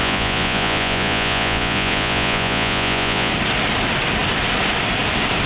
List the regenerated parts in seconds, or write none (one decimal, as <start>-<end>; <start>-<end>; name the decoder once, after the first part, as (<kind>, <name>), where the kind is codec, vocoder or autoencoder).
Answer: 0.0-3.3 (vocoder, Vocos)